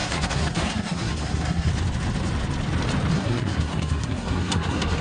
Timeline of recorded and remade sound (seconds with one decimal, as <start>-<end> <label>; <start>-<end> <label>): 0.0-1.7 remade; 1.7-3.1 recorded; 3.1-5.0 remade